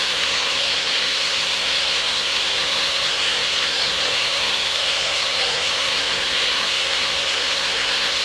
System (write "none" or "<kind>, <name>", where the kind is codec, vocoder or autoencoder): codec, SNAC